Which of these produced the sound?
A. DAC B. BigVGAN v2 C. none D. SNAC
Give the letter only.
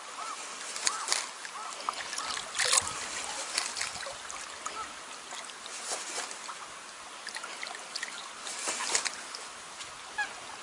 C